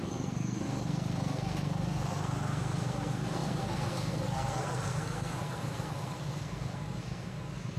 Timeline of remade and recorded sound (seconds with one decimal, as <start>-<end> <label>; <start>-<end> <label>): 0.0-7.8 remade